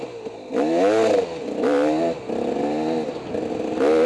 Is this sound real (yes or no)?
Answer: yes